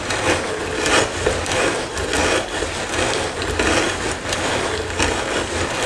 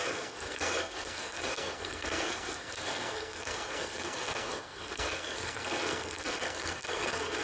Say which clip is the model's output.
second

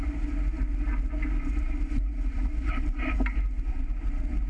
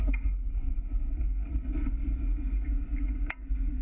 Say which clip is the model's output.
second